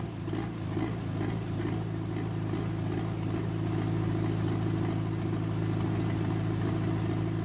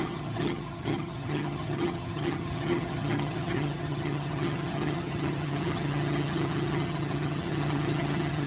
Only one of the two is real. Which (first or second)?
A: first